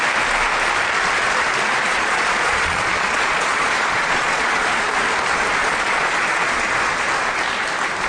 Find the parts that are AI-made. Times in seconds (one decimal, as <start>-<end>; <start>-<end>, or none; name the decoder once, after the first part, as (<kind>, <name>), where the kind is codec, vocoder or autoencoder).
1.9-4.9 (vocoder, Vocos); 5.6-7.1

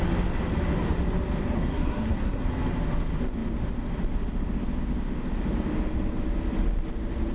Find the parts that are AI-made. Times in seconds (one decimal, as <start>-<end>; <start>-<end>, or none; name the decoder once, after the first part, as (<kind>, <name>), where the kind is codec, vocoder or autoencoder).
1.5-2.4 (codec, SNAC)

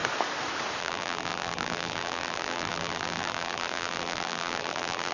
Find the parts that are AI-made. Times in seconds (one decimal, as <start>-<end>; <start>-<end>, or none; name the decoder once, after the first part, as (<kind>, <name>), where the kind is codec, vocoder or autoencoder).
0.8-5.1 (vocoder, BigVGAN v2)

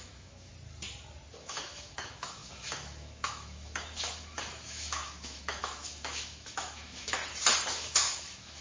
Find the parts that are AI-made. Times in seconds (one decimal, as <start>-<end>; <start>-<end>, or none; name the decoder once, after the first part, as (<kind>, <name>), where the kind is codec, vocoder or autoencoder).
0.0-0.5 (autoencoder, DAC-VAE); 1.4-7.2; 7.7-8.6

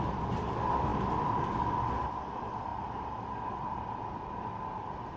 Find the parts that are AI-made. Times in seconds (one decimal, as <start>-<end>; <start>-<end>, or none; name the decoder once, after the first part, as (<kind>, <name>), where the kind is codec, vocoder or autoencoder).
none

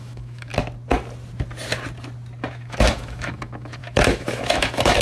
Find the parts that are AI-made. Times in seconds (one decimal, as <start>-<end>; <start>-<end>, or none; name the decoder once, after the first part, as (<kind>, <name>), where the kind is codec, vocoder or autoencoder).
0.0-0.5 (autoencoder, DAC-VAE); 2.5-5.0

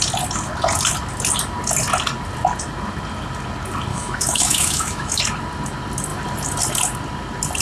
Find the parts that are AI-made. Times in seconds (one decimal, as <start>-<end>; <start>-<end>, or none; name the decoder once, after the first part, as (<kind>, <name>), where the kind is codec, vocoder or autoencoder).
3.9-5.2 (autoencoder, DAC-VAE)

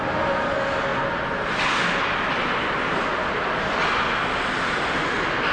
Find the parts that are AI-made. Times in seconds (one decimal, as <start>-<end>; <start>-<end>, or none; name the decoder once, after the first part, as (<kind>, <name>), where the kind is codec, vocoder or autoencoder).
none